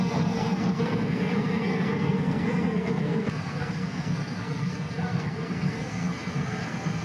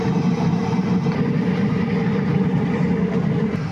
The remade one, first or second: first